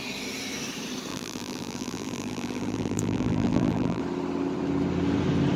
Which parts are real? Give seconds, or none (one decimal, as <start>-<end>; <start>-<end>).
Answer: 0.0-1.1; 4.0-5.6